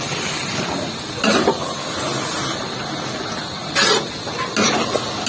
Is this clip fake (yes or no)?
no